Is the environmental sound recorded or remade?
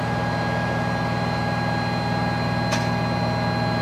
recorded